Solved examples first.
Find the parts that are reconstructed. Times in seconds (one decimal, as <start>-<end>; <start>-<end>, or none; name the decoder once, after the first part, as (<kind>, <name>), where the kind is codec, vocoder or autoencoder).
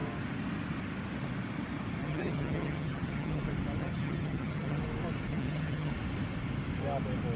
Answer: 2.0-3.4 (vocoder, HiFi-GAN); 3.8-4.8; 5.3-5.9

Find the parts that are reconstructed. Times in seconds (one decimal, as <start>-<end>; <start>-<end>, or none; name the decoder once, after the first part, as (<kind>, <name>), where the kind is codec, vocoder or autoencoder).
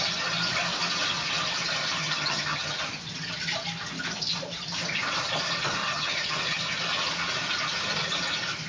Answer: 2.0-2.8 (vocoder, HiFi-GAN); 5.8-6.6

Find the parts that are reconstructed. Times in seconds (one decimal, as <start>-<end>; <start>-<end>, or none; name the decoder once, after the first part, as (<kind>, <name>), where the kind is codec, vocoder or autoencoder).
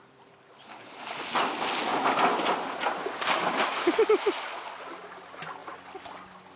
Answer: none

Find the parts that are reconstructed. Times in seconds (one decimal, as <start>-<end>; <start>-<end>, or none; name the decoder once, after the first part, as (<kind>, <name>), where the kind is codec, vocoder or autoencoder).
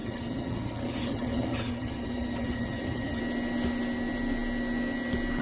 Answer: 0.0-3.2 (vocoder, HiFi-GAN)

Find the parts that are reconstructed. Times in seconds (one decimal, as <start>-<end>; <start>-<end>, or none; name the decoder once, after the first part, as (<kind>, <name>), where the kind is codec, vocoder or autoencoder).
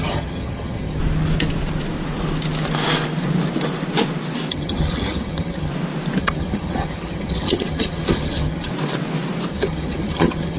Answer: 0.0-1.0 (vocoder, HiFi-GAN); 4.5-5.7; 6.2-8.7; 9.5-10.6